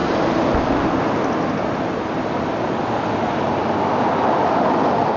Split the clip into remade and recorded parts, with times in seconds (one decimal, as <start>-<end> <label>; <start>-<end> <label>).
0.0-5.2 recorded